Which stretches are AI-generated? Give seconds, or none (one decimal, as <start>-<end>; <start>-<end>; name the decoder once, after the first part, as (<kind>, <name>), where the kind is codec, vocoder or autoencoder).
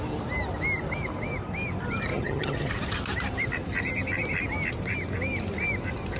2.1-2.7 (vocoder, HiFi-GAN)